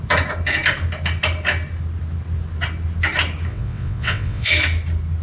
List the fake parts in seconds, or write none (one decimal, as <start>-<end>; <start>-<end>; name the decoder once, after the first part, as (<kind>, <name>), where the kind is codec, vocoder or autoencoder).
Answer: 3.5-4.5 (vocoder, WaveNeXt)